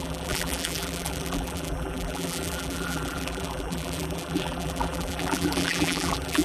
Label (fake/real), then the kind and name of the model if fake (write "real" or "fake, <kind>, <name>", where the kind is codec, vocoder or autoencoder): fake, vocoder, BigVGAN v2